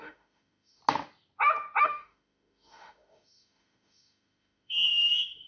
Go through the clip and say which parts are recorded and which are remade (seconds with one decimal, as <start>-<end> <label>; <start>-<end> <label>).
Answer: 0.0-0.8 remade; 0.8-1.8 recorded; 1.8-5.5 remade